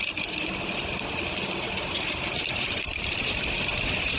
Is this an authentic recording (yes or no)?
no